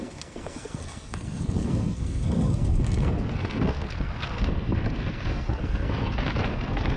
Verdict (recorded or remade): remade